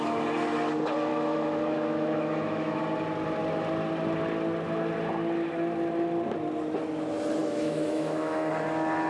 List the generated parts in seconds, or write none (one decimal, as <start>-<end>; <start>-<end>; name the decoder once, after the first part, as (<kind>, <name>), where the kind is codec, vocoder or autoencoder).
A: 1.1-2.8 (autoencoder, DAC-VAE); 7.4-8.5